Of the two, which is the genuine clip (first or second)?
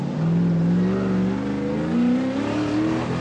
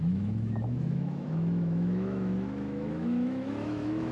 first